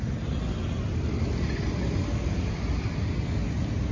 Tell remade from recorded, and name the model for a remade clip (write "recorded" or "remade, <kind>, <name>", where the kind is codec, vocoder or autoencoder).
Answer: recorded